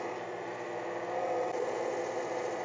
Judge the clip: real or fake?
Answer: real